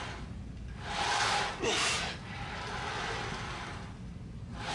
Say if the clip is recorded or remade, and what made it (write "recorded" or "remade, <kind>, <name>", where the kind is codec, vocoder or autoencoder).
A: recorded